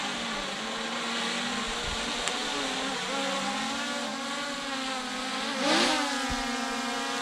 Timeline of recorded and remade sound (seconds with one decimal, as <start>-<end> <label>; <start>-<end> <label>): 0.0-7.2 recorded